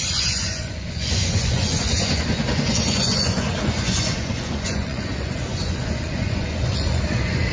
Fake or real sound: fake